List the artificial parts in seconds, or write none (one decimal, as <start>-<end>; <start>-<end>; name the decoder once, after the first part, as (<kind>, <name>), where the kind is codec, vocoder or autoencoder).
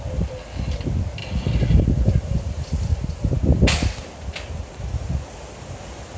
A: 1.2-3.3 (vocoder, BigVGAN v2)